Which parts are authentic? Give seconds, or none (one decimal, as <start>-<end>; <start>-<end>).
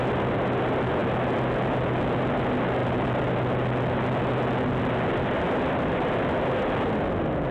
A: 0.0-7.5